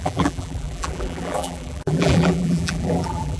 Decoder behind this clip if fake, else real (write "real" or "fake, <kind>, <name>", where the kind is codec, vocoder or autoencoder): fake, vocoder, BigVGAN v2